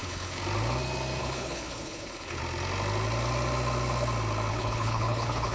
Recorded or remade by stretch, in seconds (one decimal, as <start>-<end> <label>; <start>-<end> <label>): 0.0-0.4 remade; 0.4-1.2 recorded; 1.2-2.4 remade; 2.4-4.5 recorded; 4.5-5.5 remade